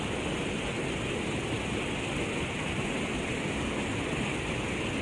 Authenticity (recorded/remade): recorded